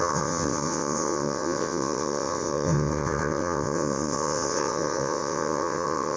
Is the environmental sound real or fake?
fake